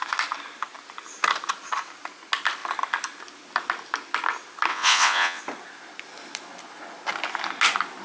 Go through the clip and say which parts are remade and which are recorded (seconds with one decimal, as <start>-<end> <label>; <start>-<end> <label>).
0.0-4.7 recorded; 4.7-5.4 remade; 5.4-8.0 recorded